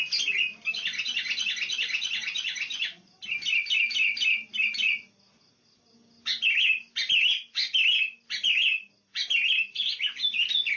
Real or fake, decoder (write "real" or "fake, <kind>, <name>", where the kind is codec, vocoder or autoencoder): real